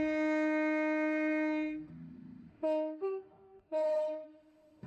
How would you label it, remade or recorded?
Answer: remade